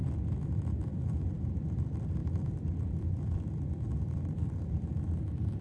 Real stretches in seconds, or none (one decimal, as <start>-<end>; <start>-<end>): none